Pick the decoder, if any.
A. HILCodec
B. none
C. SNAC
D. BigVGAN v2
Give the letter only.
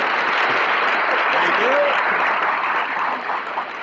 B